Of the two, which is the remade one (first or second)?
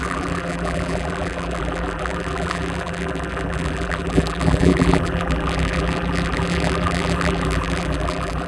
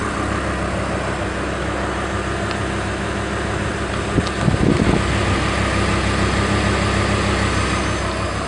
first